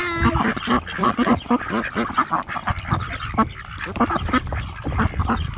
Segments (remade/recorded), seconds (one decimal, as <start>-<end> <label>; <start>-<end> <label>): 0.0-1.0 recorded; 1.0-1.7 remade; 1.7-5.6 recorded